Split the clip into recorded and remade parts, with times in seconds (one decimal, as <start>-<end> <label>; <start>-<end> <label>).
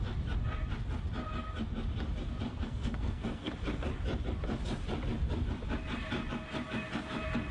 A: 0.0-2.5 recorded; 2.5-3.5 remade; 3.5-7.5 recorded